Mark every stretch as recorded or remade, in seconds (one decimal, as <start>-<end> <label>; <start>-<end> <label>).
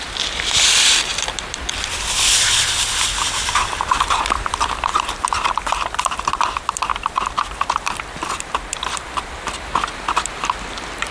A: 0.0-11.1 remade